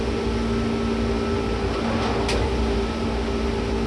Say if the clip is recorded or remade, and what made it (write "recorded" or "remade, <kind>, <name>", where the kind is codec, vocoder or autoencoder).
recorded